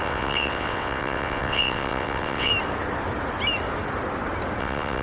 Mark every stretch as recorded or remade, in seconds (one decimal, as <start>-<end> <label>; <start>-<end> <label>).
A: 0.0-2.5 remade; 2.5-4.6 recorded; 4.6-5.0 remade